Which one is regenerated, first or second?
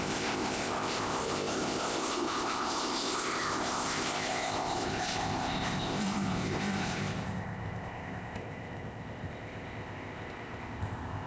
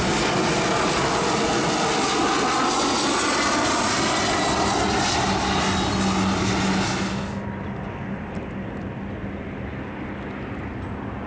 first